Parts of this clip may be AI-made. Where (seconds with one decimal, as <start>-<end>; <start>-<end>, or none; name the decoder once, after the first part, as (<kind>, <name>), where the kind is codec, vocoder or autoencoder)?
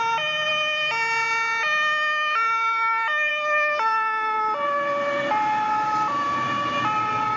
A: none